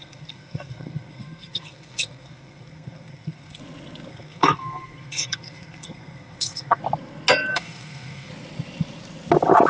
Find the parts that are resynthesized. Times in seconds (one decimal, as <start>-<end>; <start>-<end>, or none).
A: 0.0-3.6; 4.1-6.8; 7.5-8.3